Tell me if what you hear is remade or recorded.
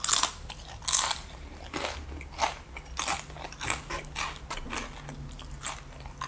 recorded